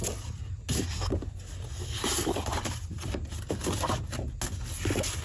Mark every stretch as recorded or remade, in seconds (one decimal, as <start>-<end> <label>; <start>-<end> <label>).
0.0-2.5 recorded; 2.5-4.3 remade; 4.3-5.2 recorded